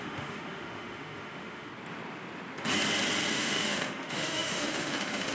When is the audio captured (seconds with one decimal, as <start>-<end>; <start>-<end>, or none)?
1.7-3.3